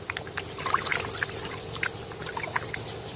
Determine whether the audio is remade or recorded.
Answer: recorded